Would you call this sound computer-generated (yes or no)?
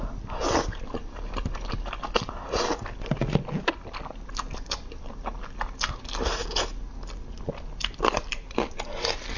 no